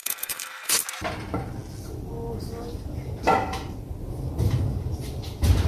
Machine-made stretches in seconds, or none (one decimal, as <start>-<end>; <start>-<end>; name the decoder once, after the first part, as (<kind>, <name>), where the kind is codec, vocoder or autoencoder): 0.0-0.8 (codec, SNAC)